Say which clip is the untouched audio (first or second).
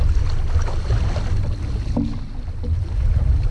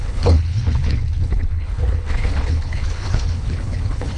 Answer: first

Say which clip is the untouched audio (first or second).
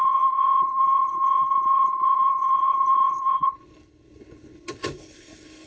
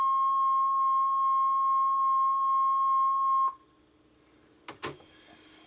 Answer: second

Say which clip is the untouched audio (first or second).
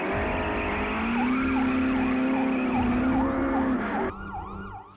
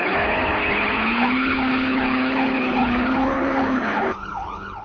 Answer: first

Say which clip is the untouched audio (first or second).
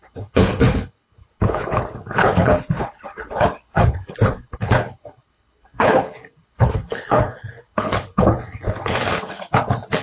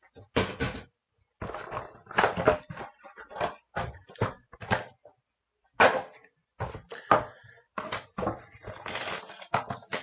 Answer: second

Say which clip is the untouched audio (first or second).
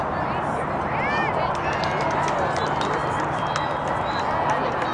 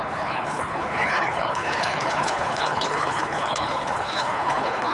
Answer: first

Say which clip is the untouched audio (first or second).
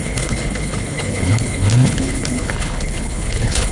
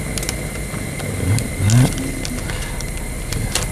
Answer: second